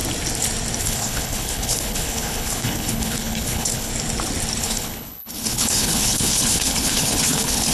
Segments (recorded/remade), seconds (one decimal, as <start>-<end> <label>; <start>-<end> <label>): 0.0-0.8 recorded; 0.8-3.9 remade; 3.9-4.6 recorded; 4.6-7.7 remade